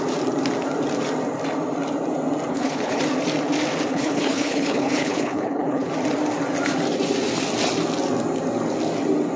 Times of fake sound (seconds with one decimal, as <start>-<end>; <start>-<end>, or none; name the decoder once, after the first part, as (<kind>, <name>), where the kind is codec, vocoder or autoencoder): 2.5-3.0 (codec, HILCodec); 3.9-5.9